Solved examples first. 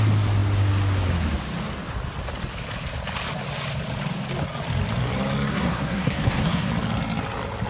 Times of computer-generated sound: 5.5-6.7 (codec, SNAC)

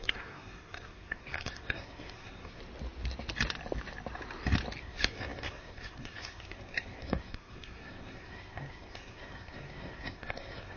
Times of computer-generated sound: 0.0-2.6 (codec, SNAC); 4.8-10.8

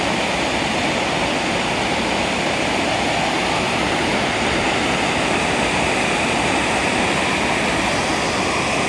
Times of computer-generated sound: none

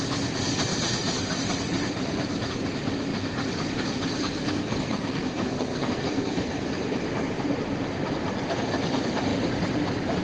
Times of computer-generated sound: 4.2-6.8 (codec, SNAC)

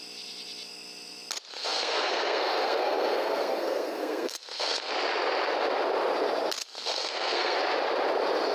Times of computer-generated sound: 1.5-4.9 (codec, SNAC); 6.6-7.6